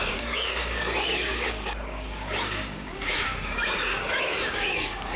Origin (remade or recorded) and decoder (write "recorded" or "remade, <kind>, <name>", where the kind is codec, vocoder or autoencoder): remade, codec, DAC